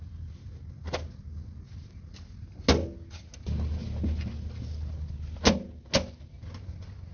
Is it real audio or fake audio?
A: real